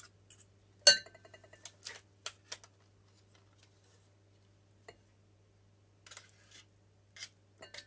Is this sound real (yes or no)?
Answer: yes